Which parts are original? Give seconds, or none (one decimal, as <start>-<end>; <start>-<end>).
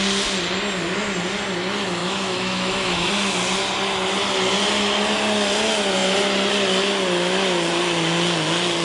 0.0-2.0; 3.1-8.8